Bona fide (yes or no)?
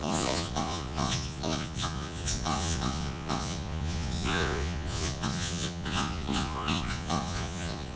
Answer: no